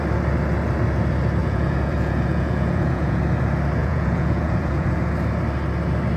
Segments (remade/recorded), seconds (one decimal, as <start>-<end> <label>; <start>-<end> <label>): 0.0-1.4 recorded; 1.4-3.2 remade; 3.2-3.8 recorded; 3.8-5.0 remade; 5.0-6.2 recorded